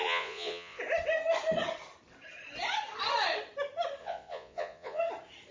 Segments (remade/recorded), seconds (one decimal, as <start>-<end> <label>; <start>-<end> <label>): 0.0-0.8 remade; 0.8-4.0 recorded; 4.0-5.0 remade; 5.0-5.5 recorded